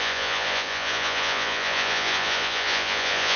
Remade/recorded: remade